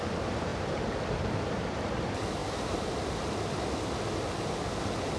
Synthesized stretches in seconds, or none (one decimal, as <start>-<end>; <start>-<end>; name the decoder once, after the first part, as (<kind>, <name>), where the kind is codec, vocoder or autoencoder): none